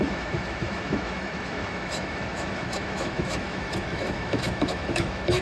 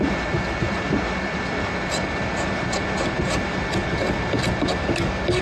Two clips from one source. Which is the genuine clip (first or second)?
second